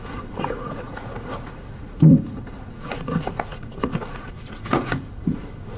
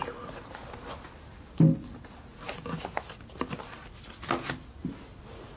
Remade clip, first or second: first